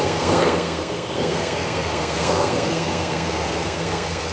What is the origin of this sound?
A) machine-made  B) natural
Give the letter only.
A